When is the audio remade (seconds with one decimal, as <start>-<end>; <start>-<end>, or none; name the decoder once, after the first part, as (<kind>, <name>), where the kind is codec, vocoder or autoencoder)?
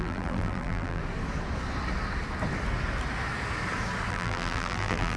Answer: 0.0-1.0 (vocoder, BigVGAN v2); 4.1-5.2